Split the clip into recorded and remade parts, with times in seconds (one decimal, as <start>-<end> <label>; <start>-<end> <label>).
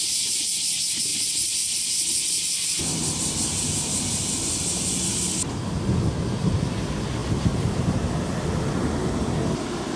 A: 0.0-10.0 recorded